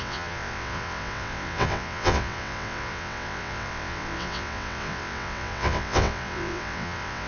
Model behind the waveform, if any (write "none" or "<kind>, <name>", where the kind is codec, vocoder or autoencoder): vocoder, WaveNeXt